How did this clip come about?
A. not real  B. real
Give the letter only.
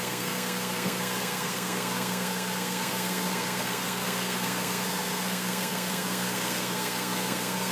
A